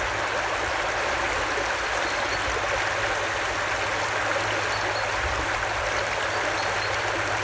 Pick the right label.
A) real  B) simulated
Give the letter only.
A